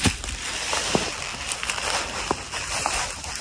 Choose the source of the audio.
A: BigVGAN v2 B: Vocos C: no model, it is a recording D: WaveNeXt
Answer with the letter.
C